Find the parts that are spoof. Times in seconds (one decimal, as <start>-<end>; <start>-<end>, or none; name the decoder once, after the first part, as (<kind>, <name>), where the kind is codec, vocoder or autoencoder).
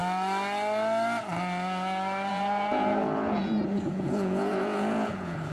2.3-5.5 (vocoder, Vocos)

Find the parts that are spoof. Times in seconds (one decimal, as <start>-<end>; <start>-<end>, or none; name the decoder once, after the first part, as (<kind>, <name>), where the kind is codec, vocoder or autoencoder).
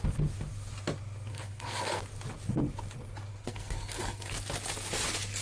1.3-2.0 (codec, SNAC); 3.3-4.3